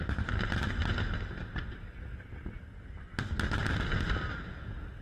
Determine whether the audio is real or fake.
real